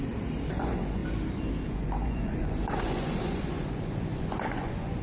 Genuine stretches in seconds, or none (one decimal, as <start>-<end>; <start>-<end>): 0.0-0.6; 1.0-1.7